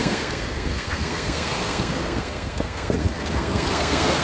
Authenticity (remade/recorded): remade